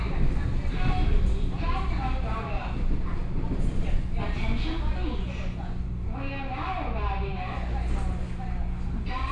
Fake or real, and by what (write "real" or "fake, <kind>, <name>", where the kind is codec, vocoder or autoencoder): real